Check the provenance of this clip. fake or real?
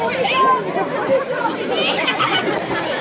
real